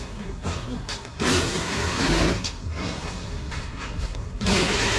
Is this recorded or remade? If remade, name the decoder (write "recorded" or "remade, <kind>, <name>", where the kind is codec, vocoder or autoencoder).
remade, codec, SNAC